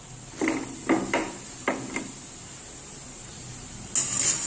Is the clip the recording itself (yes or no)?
yes